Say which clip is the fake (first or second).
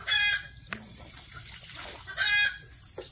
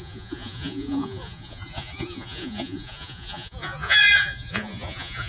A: second